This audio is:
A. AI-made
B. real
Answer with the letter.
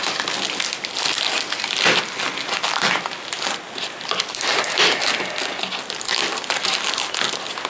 B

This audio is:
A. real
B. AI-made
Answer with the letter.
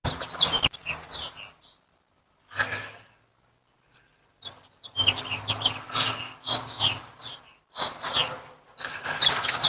A